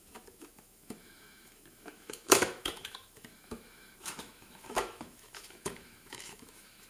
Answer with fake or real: fake